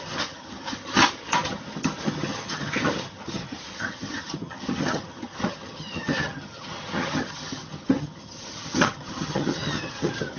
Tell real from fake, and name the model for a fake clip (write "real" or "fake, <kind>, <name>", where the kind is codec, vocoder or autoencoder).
fake, vocoder, HiFi-GAN